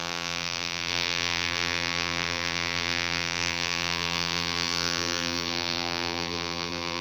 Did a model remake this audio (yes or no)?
yes